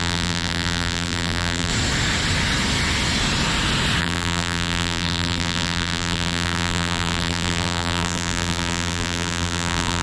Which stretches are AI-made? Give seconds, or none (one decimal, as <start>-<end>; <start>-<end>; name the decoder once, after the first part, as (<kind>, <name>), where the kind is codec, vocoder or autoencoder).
0.0-1.7 (vocoder, BigVGAN v2); 4.0-10.0